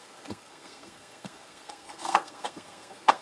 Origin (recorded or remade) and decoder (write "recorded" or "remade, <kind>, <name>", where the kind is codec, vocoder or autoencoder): remade, codec, SNAC